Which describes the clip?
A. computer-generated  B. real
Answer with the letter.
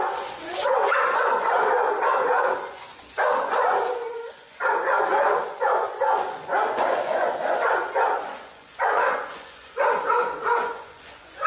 A